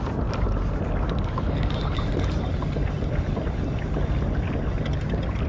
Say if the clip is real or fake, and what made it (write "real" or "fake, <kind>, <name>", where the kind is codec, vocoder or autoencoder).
real